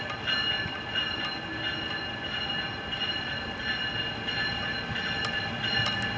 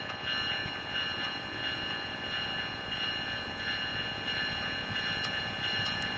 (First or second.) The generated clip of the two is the second